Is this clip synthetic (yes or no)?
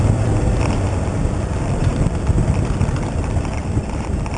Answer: yes